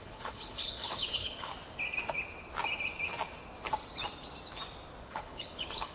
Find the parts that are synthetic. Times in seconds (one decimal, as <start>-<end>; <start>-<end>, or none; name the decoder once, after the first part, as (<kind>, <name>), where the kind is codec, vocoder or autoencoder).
0.0-1.5 (codec, HILCodec); 5.0-5.9